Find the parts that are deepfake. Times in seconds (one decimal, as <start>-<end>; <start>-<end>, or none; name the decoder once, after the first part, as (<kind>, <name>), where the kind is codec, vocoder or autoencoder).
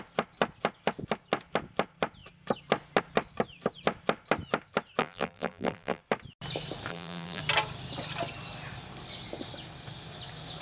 5.0-6.0 (vocoder, BigVGAN v2); 6.9-7.4